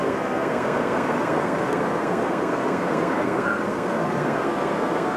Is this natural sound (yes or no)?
no